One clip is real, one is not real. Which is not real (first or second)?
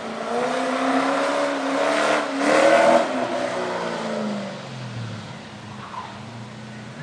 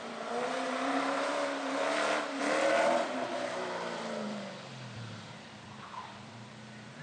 second